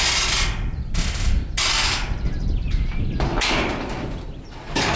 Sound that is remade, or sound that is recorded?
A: recorded